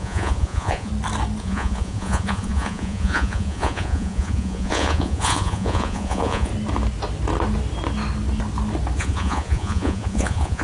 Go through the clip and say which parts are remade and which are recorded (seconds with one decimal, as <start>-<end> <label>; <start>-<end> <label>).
0.0-0.9 remade; 0.9-1.4 recorded; 1.4-6.5 remade; 6.5-9.0 recorded; 9.0-10.6 remade